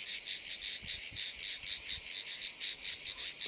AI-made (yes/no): no